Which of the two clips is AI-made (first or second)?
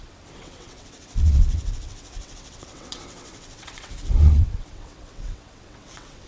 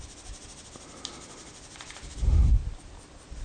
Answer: first